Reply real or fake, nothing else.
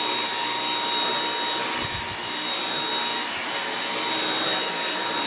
real